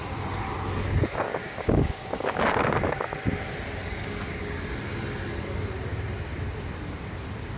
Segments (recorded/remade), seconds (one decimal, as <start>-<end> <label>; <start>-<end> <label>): 0.0-1.4 recorded; 1.4-3.0 remade; 3.0-3.8 recorded; 3.8-4.7 remade; 4.7-7.6 recorded